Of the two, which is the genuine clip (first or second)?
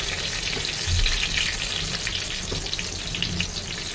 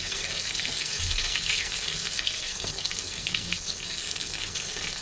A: first